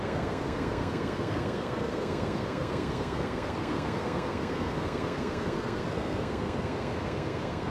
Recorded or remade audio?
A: remade